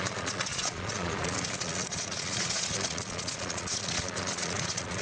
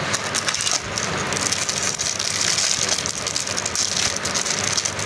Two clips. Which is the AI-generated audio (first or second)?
first